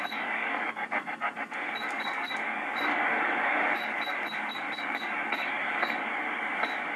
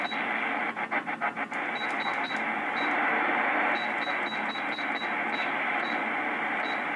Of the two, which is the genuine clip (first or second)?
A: second